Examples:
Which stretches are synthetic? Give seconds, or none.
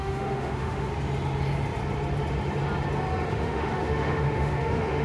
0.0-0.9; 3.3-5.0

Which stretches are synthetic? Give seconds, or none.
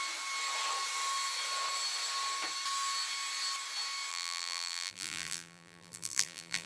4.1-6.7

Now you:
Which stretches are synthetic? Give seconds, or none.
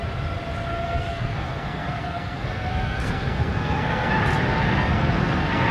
0.7-4.1; 4.5-5.7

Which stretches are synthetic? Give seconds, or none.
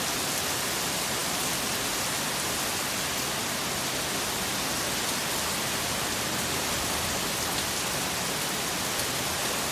none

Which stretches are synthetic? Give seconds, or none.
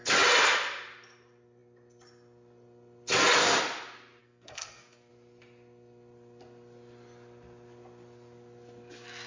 4.2-5.1